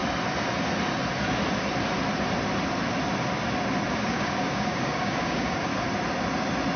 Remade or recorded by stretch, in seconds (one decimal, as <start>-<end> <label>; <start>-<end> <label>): 0.0-3.9 recorded; 3.9-5.7 remade; 5.7-6.8 recorded